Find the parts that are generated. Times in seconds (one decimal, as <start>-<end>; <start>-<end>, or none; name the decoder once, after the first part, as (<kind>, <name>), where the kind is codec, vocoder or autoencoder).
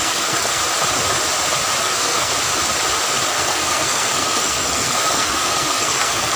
0.0-0.6 (codec, SNAC); 1.8-2.3; 3.3-6.4